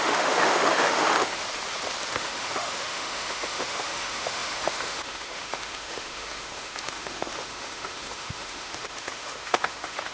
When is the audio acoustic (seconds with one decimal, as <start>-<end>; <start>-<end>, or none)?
1.4-2.1